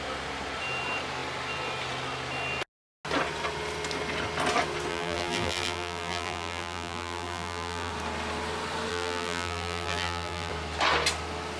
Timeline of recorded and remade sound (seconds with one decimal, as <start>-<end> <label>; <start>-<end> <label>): 0.0-4.9 recorded; 4.9-7.9 remade; 7.9-8.9 recorded; 8.9-10.5 remade; 10.5-11.6 recorded